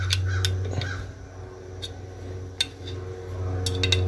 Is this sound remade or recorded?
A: recorded